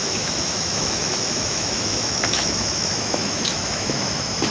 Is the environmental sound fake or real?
fake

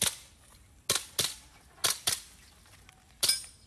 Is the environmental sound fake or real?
real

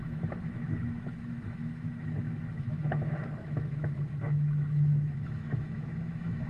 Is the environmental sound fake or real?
fake